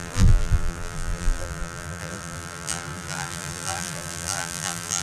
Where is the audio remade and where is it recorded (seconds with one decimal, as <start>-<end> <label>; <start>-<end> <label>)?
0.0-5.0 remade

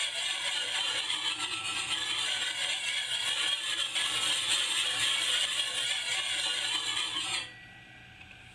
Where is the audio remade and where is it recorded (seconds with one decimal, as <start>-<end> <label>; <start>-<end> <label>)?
0.0-0.8 remade; 0.8-8.5 recorded

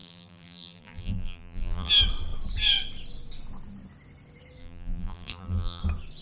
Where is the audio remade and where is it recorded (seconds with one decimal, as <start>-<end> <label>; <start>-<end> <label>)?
0.0-1.9 remade; 1.9-4.6 recorded; 4.6-5.8 remade; 5.8-6.2 recorded

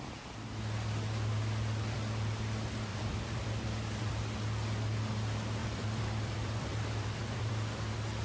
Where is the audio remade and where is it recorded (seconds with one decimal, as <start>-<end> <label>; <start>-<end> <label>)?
0.0-2.9 recorded; 2.9-4.1 remade; 4.1-5.6 recorded; 5.6-7.5 remade; 7.5-8.2 recorded